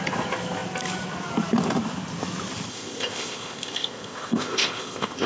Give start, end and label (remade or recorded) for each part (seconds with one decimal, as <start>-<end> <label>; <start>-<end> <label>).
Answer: 0.0-2.7 recorded; 2.7-5.3 remade